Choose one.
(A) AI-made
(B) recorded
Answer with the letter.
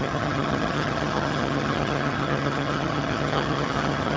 A